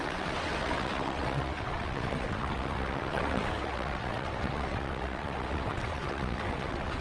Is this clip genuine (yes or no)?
no